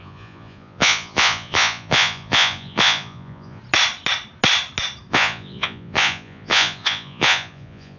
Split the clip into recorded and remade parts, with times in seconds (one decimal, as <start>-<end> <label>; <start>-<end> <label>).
0.0-3.6 remade; 3.6-5.1 recorded; 5.1-8.0 remade